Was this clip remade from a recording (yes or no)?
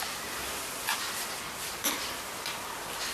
no